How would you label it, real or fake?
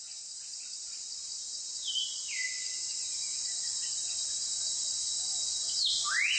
real